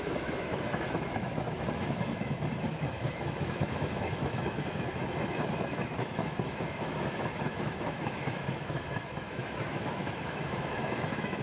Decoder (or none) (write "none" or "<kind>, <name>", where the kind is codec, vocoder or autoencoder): autoencoder, DAC-VAE